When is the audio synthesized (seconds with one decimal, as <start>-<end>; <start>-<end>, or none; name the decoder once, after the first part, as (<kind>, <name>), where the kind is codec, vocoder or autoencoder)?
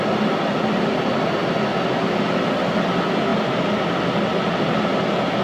0.0-1.4 (vocoder, BigVGAN v2); 2.5-5.4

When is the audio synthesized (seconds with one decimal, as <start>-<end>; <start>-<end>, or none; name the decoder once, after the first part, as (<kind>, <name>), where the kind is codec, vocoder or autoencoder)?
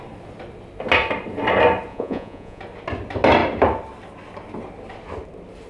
1.9-2.6 (vocoder, Vocos)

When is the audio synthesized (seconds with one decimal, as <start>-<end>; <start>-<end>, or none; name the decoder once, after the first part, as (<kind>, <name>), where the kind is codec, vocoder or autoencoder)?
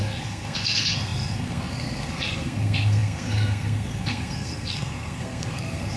0.0-6.0 (codec, SNAC)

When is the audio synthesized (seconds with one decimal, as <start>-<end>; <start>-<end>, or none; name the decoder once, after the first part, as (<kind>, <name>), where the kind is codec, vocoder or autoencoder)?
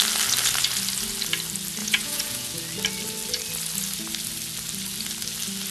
1.8-2.6 (vocoder, Vocos)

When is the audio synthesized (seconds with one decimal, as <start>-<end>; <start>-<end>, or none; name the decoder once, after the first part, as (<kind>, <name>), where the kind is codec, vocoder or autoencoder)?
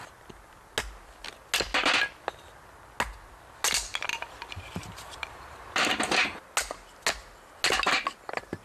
4.1-5.9 (vocoder, BigVGAN v2)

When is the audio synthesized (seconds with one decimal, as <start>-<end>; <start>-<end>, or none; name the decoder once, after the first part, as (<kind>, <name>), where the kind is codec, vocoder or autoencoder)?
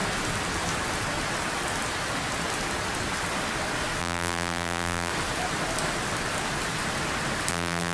4.0-5.1 (vocoder, BigVGAN v2); 7.5-7.9